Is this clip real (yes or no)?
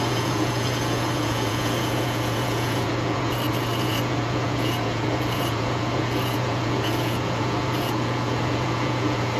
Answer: no